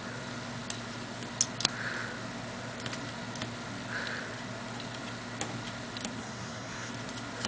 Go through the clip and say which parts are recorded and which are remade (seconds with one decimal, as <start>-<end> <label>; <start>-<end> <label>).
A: 0.0-6.2 recorded; 6.2-6.9 remade; 6.9-7.5 recorded